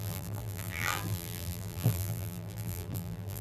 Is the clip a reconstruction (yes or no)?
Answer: yes